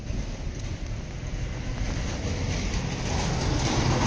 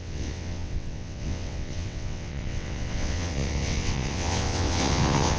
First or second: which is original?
first